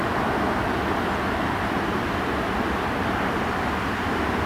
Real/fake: real